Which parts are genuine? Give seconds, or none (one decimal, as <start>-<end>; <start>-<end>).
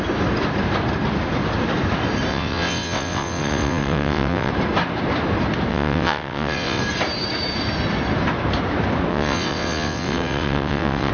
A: 0.0-2.3; 4.5-5.7; 6.8-9.1